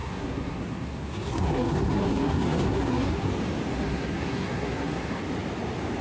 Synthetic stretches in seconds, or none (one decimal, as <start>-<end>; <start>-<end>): 0.0-3.3; 3.7-5.2